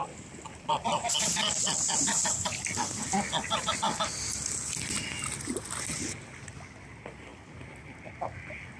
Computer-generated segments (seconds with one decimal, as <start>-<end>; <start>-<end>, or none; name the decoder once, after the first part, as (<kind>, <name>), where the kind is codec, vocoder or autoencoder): none